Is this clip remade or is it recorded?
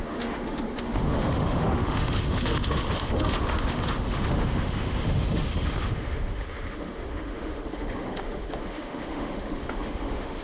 remade